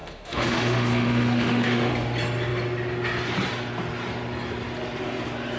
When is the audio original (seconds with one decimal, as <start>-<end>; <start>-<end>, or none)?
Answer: 1.9-5.6

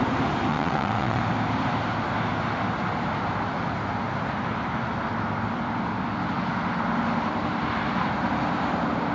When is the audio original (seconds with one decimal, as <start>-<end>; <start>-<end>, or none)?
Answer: 0.0-0.5; 1.2-9.1

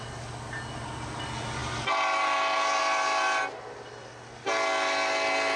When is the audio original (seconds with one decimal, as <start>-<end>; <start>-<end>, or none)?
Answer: 0.0-5.6

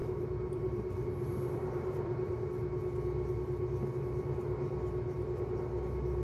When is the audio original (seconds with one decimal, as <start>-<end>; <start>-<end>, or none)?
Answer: 2.5-6.2

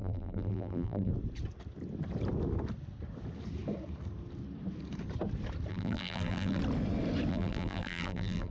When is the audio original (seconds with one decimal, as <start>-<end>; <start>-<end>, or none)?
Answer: 1.1-5.7; 6.6-7.3

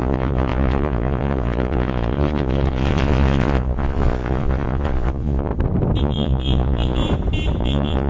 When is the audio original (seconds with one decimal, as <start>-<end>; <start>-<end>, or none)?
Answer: 5.5-6.0; 7.0-7.6